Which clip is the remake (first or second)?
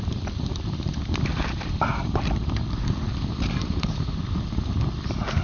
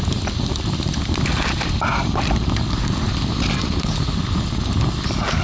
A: first